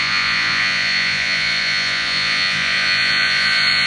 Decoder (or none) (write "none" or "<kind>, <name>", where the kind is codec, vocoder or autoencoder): vocoder, Vocos